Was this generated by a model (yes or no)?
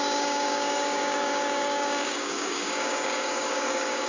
yes